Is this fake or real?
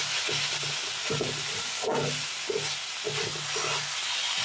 real